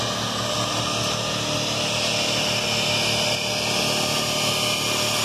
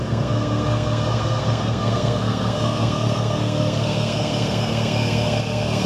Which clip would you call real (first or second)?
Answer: first